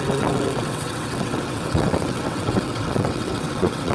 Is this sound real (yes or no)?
no